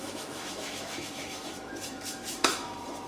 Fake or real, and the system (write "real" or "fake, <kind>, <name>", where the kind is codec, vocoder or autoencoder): fake, autoencoder, DAC-VAE